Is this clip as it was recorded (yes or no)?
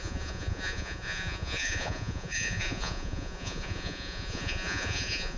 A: no